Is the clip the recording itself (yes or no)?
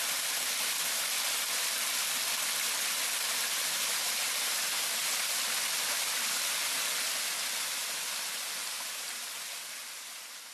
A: yes